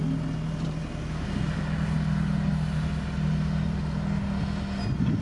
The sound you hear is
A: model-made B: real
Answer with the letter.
B